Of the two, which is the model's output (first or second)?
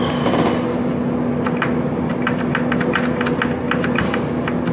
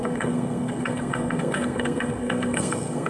second